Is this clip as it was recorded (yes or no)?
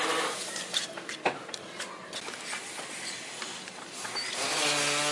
yes